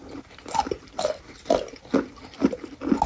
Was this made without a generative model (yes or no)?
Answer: yes